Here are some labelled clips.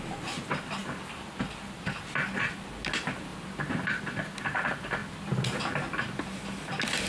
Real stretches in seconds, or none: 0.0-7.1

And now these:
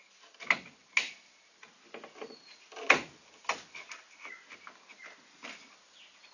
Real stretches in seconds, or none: 0.0-6.3

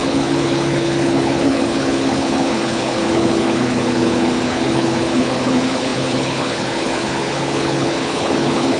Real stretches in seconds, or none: none

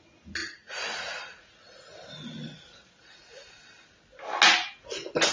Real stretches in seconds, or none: 0.0-0.4; 3.6-5.3